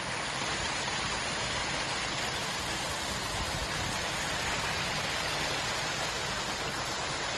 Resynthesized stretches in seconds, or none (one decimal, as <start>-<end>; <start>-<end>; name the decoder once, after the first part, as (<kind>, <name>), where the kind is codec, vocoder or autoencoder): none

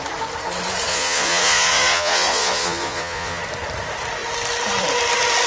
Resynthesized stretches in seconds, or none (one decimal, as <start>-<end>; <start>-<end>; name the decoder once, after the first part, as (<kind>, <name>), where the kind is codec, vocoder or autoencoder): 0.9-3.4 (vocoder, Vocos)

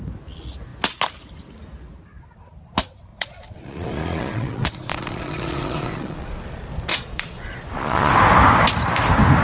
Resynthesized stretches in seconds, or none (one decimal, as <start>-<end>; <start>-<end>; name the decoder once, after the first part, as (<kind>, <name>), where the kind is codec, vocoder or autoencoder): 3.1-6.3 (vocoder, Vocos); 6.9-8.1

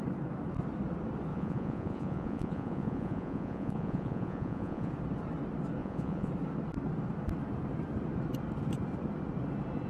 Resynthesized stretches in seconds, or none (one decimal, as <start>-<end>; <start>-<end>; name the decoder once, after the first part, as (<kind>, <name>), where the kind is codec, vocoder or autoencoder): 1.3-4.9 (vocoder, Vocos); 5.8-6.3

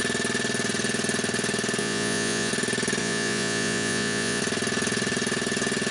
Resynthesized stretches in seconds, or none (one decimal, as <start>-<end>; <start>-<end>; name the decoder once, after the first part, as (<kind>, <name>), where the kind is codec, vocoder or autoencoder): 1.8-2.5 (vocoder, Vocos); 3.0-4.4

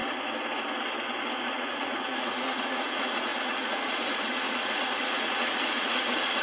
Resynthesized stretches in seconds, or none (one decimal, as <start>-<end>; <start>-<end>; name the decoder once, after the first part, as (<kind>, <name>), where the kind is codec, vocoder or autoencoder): 1.4-6.4 (vocoder, Vocos)

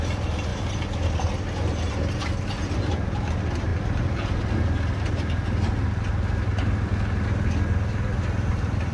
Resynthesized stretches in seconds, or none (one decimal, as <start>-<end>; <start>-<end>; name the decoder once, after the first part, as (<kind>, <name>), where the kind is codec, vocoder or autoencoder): none